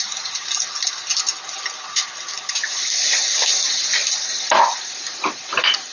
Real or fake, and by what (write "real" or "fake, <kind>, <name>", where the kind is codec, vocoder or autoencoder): real